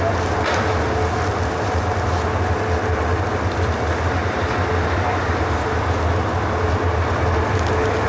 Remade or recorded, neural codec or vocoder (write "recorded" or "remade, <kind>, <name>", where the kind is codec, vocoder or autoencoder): recorded